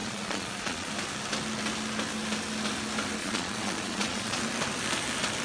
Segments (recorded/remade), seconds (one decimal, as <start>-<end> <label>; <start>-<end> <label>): 0.0-0.9 remade; 0.9-3.2 recorded; 3.2-4.4 remade; 4.4-5.4 recorded